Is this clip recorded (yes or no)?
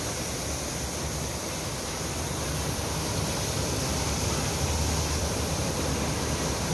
no